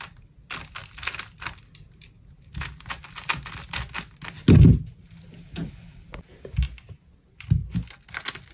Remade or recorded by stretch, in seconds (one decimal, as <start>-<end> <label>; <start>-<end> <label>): 0.0-8.5 recorded